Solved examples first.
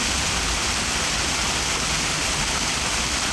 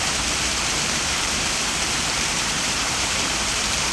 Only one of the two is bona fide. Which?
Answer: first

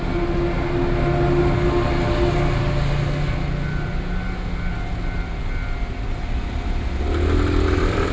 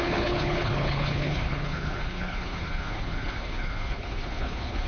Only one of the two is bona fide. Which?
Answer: first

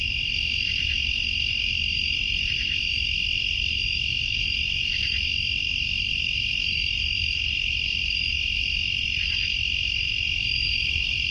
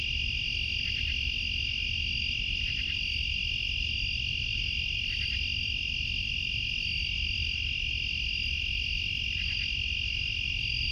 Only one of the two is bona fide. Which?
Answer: second